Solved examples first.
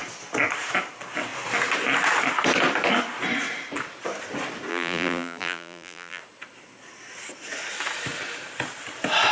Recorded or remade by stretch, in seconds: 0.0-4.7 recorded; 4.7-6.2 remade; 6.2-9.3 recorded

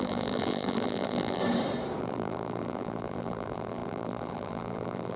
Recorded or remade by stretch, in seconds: 0.0-1.4 remade; 1.4-2.0 recorded; 2.0-5.2 remade

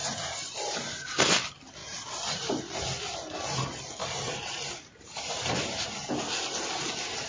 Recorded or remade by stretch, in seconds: 0.0-0.8 remade; 0.8-1.8 recorded; 1.8-2.6 remade; 2.6-4.0 recorded; 4.0-6.1 remade; 6.1-7.3 recorded

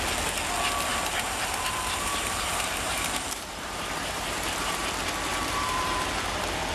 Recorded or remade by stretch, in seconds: 0.0-0.9 recorded; 0.9-4.8 remade; 4.8-5.3 recorded; 5.3-6.1 remade; 6.1-6.7 recorded

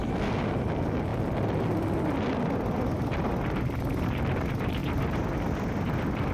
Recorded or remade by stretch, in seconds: 0.0-6.3 recorded

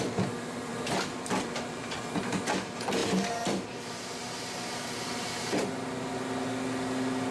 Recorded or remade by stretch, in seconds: 0.0-0.7 recorded; 0.7-2.0 remade; 2.0-3.0 recorded; 3.0-5.4 remade; 5.4-7.3 recorded